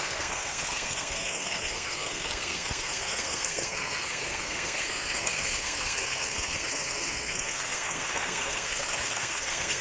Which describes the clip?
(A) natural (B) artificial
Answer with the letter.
B